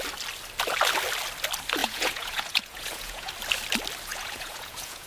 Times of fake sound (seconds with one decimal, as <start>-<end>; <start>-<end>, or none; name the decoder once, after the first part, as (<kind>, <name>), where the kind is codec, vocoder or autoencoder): 1.8-3.3 (vocoder, Vocos); 4.1-5.1